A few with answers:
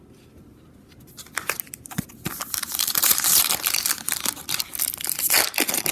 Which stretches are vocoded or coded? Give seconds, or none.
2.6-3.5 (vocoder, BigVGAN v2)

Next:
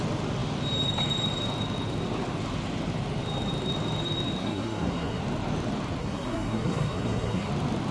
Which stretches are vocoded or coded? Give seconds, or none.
4.4-5.2 (codec, SNAC); 6.0-7.5